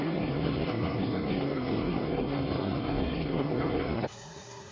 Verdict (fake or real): fake